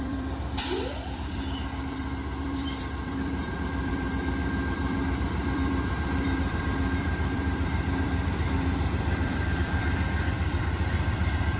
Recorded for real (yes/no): no